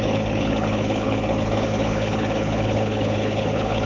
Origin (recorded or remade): remade